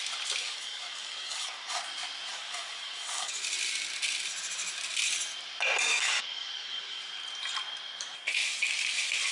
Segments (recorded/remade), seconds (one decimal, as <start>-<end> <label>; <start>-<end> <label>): 0.0-0.4 recorded; 0.4-1.8 remade; 1.8-2.3 recorded; 2.3-3.4 remade; 3.4-5.9 recorded; 5.9-7.0 remade; 7.0-9.3 recorded